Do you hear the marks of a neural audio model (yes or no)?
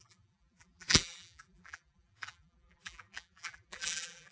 yes